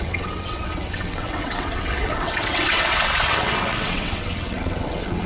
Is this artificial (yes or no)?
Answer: yes